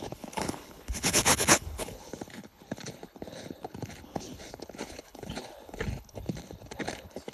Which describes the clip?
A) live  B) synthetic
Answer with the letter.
B